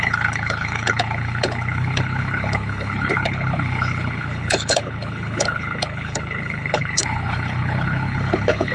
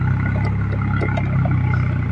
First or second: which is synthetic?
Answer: first